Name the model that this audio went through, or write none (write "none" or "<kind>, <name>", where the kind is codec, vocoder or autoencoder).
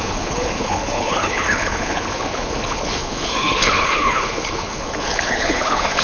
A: codec, HILCodec